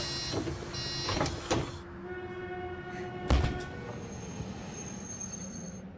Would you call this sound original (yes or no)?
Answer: yes